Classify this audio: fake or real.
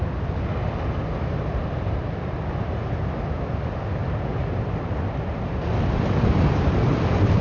real